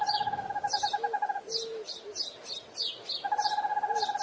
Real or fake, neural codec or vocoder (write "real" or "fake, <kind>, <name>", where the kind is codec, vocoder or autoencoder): real